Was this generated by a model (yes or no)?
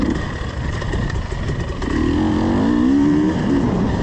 no